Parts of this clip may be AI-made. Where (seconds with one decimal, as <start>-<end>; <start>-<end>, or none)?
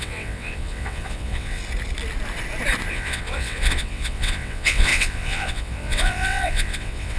0.0-1.6; 2.9-7.2